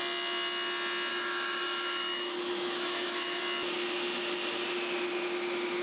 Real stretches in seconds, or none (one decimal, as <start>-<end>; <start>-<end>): 0.0-1.1; 3.4-5.8